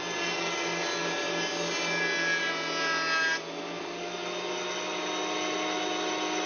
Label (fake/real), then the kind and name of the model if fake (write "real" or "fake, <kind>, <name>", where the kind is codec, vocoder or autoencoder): real